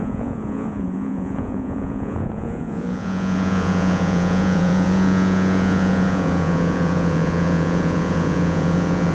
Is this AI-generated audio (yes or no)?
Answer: yes